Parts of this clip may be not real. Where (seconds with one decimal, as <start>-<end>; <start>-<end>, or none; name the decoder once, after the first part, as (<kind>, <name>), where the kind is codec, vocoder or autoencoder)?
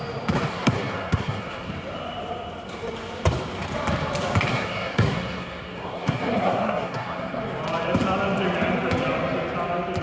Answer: 0.5-1.7 (codec, SNAC); 4.5-7.4